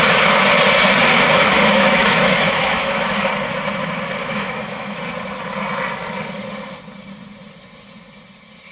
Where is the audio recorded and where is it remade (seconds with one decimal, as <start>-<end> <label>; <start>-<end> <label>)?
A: 0.0-1.4 recorded; 1.4-3.3 remade; 3.3-4.2 recorded; 4.2-5.0 remade; 5.0-8.7 recorded